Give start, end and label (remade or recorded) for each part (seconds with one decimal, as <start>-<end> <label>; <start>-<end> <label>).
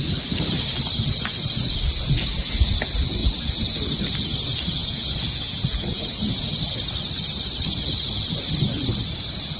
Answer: 0.0-4.8 recorded; 4.8-6.6 remade; 6.6-9.6 recorded